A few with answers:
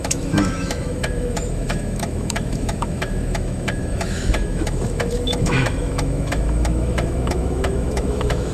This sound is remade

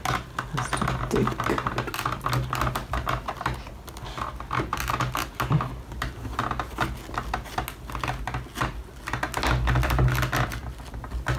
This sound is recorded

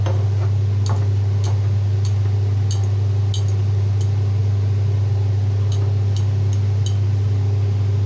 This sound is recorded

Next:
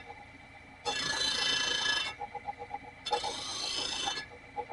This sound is recorded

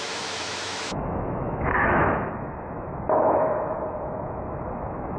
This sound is remade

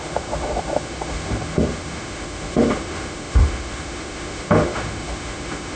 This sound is remade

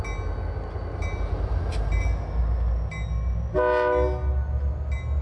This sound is recorded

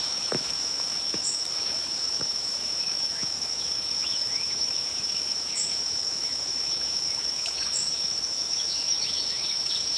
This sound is remade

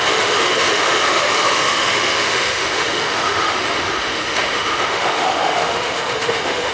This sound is remade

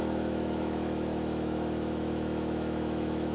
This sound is remade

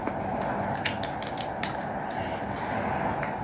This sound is recorded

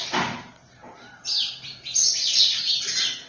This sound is recorded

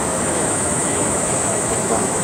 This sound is remade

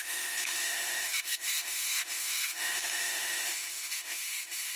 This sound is remade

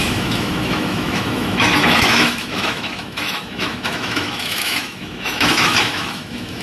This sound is remade